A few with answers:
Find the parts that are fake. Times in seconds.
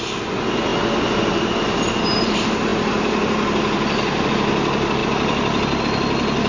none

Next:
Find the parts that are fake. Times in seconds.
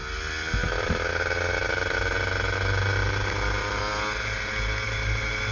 none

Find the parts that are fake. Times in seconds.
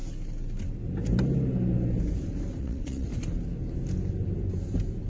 2.6-3.1